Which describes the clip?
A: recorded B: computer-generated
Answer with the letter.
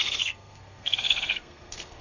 B